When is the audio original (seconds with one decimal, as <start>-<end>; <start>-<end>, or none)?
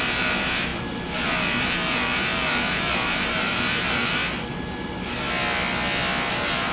4.2-6.3